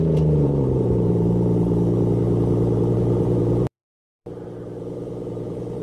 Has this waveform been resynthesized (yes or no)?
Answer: yes